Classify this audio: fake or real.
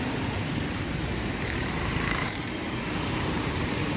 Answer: fake